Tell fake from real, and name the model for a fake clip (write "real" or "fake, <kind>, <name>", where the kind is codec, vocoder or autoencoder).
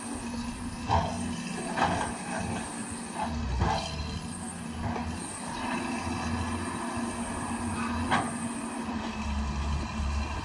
real